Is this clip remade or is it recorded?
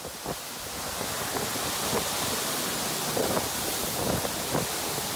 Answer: recorded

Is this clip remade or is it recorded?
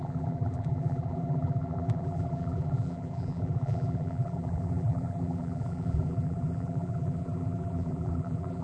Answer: remade